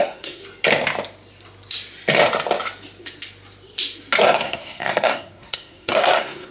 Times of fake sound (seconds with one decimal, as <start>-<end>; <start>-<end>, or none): 0.0-0.4; 4.2-6.5